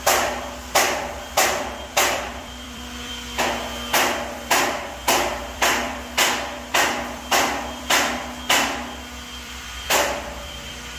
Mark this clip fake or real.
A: fake